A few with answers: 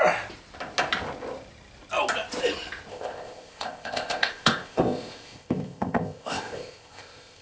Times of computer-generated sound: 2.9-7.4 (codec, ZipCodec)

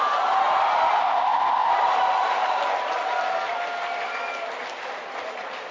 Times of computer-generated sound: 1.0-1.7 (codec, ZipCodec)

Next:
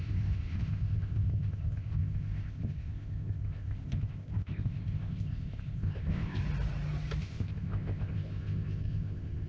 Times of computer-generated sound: 0.0-6.4 (codec, ZipCodec); 7.2-9.5